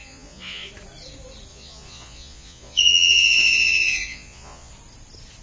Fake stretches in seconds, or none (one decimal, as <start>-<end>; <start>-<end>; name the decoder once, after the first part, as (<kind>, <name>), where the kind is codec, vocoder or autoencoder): 0.0-0.7 (vocoder, Vocos); 1.5-4.7